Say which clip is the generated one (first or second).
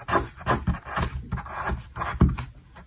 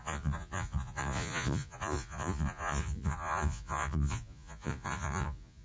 second